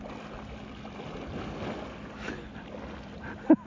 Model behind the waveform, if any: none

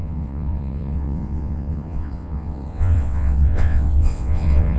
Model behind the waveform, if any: vocoder, WaveNeXt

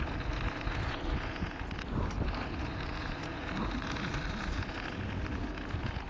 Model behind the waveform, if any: none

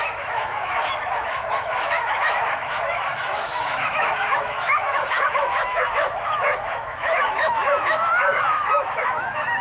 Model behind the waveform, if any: autoencoder, DAC-VAE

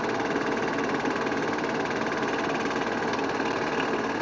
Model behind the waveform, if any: none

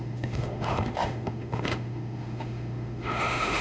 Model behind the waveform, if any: autoencoder, DAC-VAE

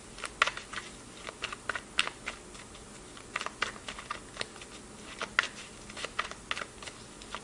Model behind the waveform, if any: none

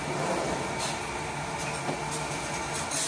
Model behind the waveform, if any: none